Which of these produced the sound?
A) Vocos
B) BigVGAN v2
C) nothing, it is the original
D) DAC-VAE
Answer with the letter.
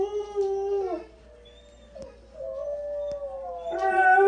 C